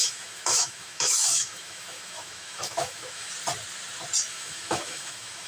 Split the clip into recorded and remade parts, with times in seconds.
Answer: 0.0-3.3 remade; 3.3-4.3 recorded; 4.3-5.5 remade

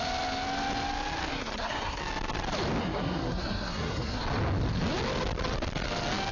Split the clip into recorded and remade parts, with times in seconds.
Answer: 0.0-1.3 recorded; 1.3-2.0 remade; 2.0-2.8 recorded; 2.8-4.2 remade; 4.2-6.3 recorded

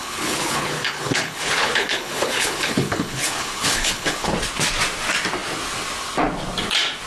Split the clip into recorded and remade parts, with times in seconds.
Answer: 0.0-4.3 remade; 4.3-7.1 recorded

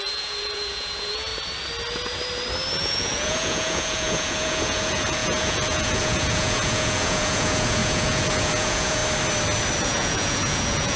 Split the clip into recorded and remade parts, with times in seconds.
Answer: 0.0-1.3 remade; 1.3-2.8 recorded; 2.8-9.0 remade; 9.0-9.8 recorded; 9.8-11.0 remade

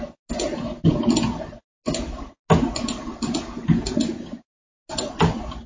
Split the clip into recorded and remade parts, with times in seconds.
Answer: 0.0-5.7 recorded

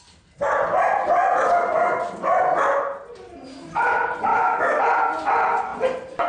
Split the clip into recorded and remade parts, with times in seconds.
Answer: 0.0-4.3 recorded; 4.3-4.8 remade; 4.8-6.3 recorded

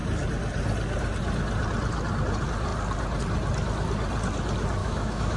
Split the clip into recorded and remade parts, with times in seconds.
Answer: 0.0-4.8 recorded; 4.8-5.4 remade